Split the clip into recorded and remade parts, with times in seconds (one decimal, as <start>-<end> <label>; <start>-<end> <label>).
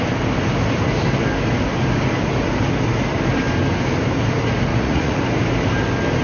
0.0-4.7 recorded; 4.7-5.2 remade; 5.2-6.2 recorded